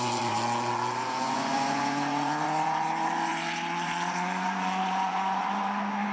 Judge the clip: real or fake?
fake